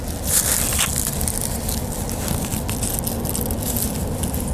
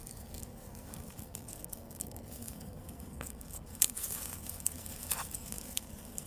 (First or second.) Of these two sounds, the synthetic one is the second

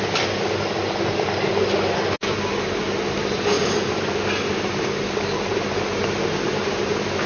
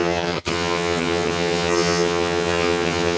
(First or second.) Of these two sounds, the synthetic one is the second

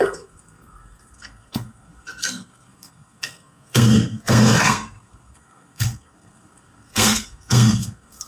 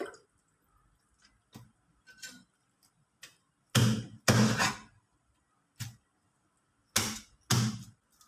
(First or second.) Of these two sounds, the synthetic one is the first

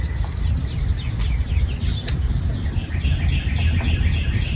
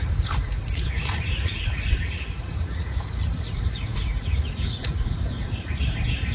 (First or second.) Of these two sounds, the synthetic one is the second